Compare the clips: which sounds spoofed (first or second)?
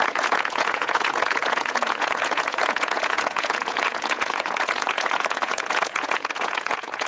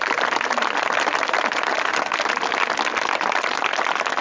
first